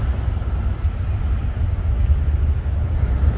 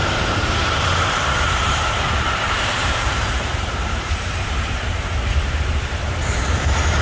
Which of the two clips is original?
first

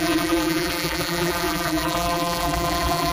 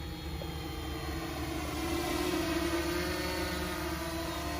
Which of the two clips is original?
second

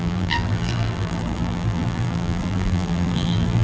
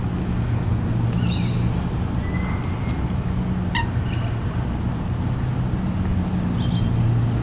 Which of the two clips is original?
second